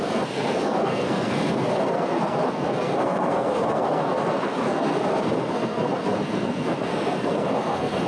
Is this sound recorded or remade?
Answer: remade